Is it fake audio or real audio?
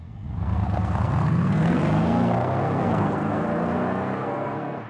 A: fake